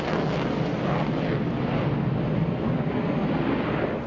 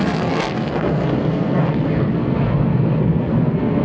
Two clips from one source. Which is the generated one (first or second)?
second